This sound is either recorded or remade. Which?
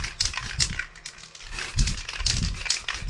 recorded